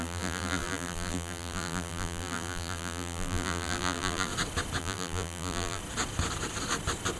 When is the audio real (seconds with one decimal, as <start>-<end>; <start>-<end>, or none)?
4.3-4.8; 5.8-7.2